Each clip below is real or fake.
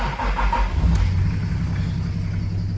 real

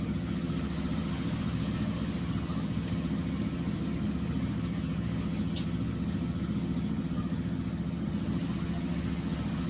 fake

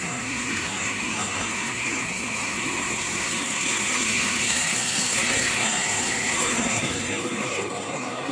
fake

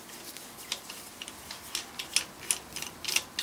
real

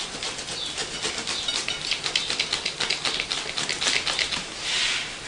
real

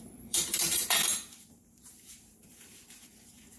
fake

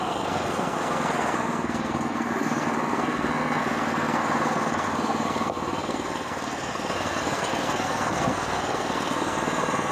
fake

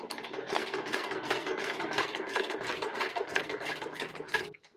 fake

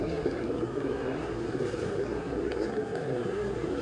fake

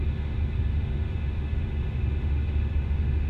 fake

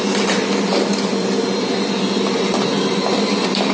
real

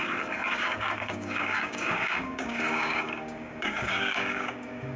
fake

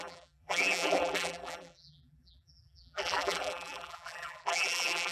fake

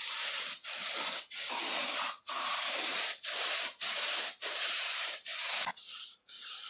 fake